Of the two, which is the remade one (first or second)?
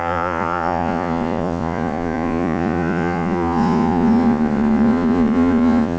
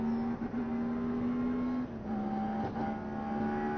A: first